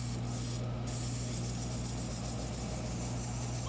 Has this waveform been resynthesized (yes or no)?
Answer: no